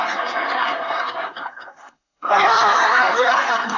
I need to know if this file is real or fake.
fake